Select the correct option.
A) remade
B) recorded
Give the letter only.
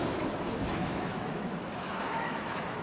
A